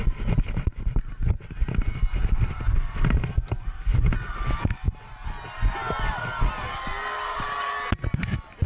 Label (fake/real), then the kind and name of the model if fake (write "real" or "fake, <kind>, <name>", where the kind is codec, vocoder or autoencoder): real